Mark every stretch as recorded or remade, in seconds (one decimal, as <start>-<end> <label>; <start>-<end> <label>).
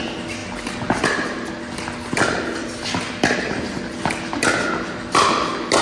0.0-5.8 recorded